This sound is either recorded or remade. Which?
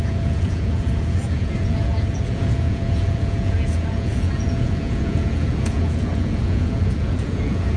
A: remade